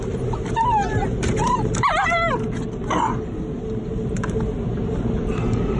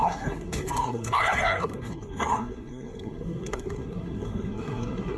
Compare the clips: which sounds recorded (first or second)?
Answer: first